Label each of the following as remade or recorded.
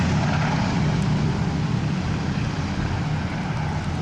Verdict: recorded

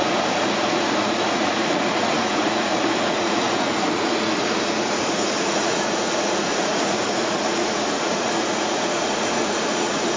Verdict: remade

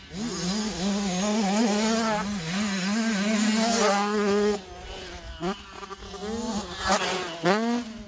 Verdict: recorded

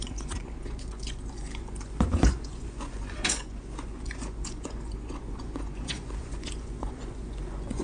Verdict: remade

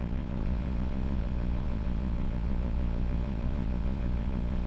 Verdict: remade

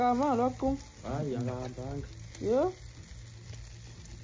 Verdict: recorded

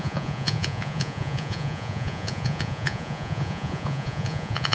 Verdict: remade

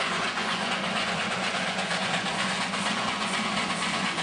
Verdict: remade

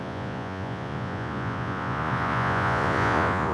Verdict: remade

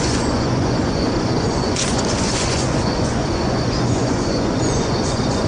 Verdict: remade